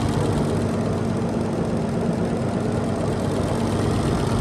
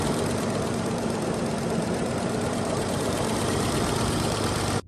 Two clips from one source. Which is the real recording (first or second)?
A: first